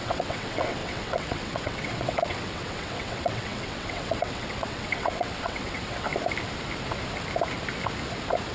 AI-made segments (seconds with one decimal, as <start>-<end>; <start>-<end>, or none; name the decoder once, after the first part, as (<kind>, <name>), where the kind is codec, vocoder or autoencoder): 0.0-6.1 (vocoder, WaveNeXt)